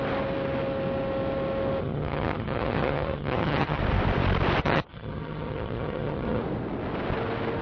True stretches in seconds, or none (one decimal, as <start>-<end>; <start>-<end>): 0.0-1.8; 3.8-4.6; 6.4-7.6